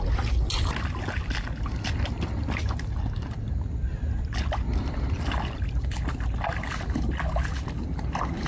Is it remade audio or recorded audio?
recorded